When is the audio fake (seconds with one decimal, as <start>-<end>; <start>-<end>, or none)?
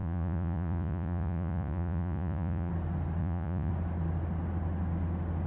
0.0-2.7; 3.2-3.7